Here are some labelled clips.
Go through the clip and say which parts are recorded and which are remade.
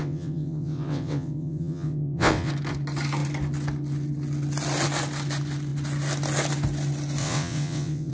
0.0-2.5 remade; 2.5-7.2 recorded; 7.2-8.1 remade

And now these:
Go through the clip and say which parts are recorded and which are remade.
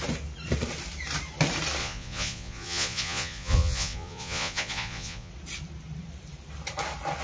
0.0-1.8 recorded; 1.8-5.3 remade; 5.3-7.2 recorded